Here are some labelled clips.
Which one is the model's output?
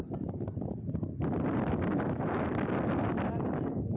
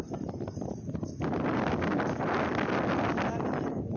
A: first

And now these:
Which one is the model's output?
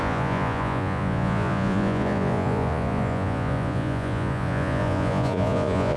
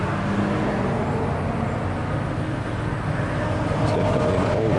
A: first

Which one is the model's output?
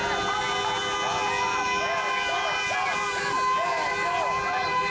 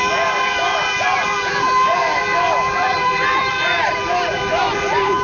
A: second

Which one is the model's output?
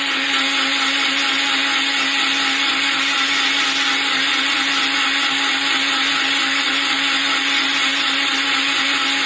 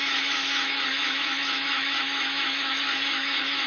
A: second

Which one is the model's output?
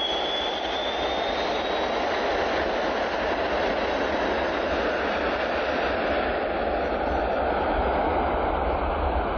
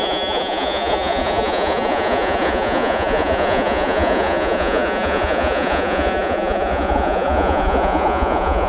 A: second